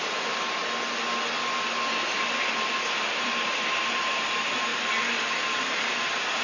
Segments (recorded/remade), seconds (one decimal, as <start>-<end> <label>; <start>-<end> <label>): 0.0-0.6 remade; 0.6-3.1 recorded; 3.1-4.7 remade; 4.7-5.6 recorded; 5.6-6.4 remade